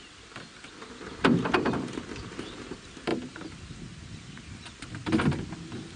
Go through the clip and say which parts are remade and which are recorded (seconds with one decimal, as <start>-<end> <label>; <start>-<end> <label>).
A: 0.0-6.0 recorded